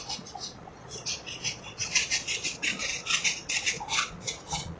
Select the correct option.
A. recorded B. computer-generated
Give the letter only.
B